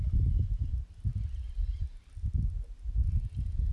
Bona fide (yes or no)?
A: yes